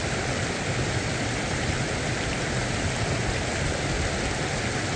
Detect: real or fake real